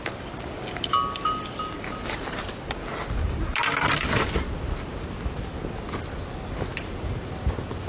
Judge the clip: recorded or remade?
recorded